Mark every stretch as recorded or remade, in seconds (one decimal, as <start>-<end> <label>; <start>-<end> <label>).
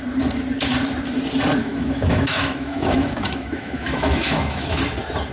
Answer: 0.0-1.6 recorded; 1.6-4.8 remade; 4.8-5.3 recorded